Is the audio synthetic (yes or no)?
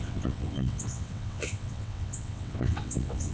yes